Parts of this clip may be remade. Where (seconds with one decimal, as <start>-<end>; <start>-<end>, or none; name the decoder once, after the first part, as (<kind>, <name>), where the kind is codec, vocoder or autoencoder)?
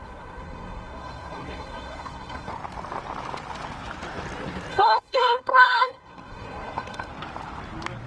0.0-2.5 (codec, SNAC); 4.7-7.1